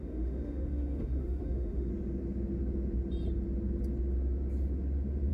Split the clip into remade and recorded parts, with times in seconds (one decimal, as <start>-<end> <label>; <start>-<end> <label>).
0.0-1.9 remade; 1.9-5.3 recorded